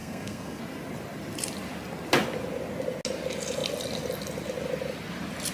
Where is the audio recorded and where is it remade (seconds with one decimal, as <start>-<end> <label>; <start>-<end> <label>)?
0.0-0.6 remade; 0.6-5.5 recorded